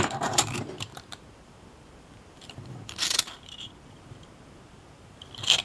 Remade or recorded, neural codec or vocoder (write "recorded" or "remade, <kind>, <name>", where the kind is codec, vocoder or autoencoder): remade, vocoder, BigVGAN v2